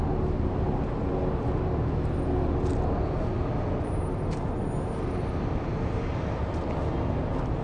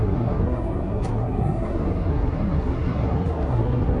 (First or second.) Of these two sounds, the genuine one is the first